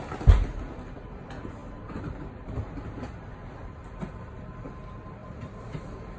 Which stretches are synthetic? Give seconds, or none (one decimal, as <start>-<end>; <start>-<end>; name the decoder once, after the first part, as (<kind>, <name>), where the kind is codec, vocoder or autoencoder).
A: 5.2-5.8 (vocoder, BigVGAN v2)